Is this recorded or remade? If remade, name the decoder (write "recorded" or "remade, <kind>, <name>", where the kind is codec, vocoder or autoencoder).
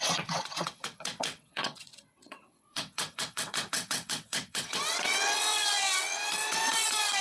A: remade, vocoder, WaveNeXt